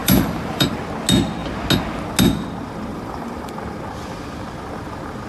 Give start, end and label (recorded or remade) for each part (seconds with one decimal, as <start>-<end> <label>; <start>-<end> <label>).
0.0-0.8 remade; 0.8-2.9 recorded; 2.9-3.5 remade; 3.5-5.3 recorded